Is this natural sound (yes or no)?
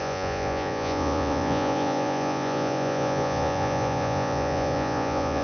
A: no